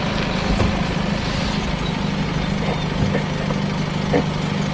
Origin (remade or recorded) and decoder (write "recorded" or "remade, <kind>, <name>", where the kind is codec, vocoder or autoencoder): recorded